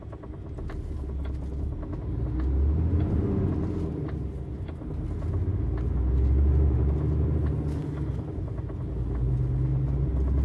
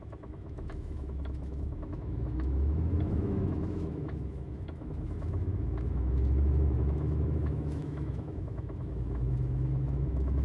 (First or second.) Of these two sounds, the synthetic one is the second